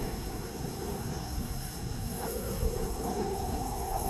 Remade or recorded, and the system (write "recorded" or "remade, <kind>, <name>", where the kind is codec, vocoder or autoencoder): remade, codec, SNAC